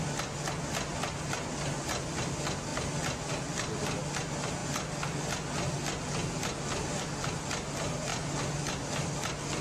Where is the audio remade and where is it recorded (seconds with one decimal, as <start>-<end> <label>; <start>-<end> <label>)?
0.0-9.6 recorded